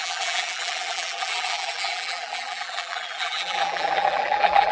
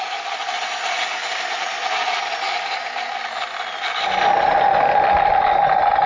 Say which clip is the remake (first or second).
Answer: first